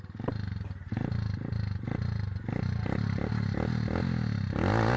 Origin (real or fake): real